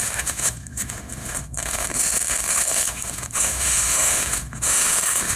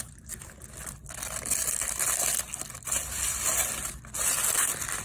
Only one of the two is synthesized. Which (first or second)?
first